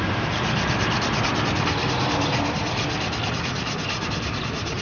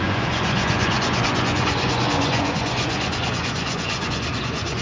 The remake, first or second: second